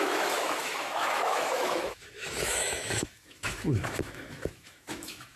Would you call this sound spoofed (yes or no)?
yes